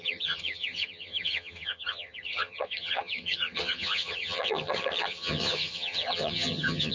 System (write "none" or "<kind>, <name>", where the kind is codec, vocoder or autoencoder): vocoder, HiFi-GAN